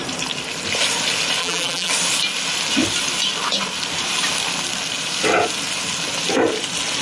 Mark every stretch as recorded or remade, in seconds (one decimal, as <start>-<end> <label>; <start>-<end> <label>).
0.0-1.4 recorded; 1.4-1.9 remade; 1.9-7.0 recorded